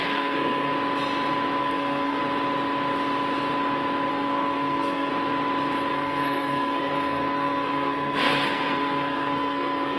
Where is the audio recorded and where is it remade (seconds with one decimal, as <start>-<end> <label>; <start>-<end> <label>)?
0.0-0.7 remade; 0.7-1.6 recorded; 1.6-2.2 remade; 2.2-4.1 recorded; 4.1-5.1 remade; 5.1-5.9 recorded; 5.9-10.0 remade